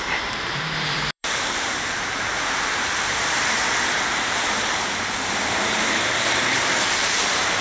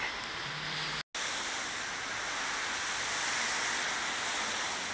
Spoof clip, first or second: first